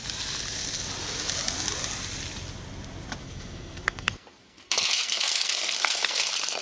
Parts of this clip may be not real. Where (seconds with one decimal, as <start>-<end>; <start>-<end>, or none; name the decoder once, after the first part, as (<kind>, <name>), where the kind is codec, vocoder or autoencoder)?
3.2-6.6 (codec, SNAC)

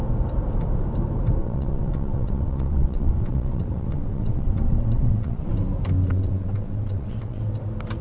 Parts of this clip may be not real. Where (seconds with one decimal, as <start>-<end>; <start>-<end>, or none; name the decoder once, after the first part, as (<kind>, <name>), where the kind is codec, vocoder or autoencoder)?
1.4-5.5 (vocoder, WaveNeXt); 6.1-7.4